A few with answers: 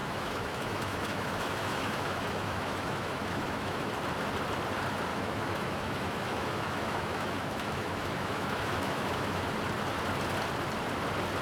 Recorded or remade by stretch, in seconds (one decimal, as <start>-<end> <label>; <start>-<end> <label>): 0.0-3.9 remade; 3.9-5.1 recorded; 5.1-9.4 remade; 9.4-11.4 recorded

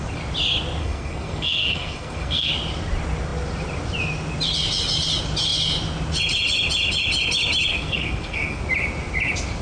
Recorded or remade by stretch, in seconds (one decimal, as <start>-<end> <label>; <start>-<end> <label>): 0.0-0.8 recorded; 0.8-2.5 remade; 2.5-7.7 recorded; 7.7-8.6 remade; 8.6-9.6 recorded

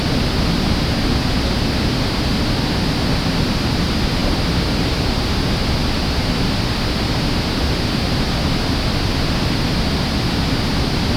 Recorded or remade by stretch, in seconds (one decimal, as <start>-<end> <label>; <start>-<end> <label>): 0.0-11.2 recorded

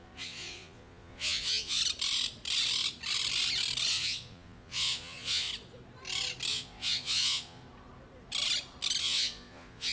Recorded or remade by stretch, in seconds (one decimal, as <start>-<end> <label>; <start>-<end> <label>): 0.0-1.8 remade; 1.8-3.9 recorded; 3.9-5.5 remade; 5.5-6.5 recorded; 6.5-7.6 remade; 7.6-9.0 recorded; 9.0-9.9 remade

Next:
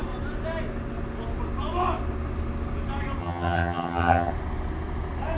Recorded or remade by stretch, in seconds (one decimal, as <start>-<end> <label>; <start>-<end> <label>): 0.0-3.2 recorded; 3.2-4.3 remade; 4.3-5.4 recorded

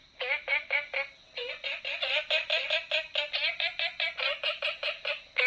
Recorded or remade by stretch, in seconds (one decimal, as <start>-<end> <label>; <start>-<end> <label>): 0.0-5.5 recorded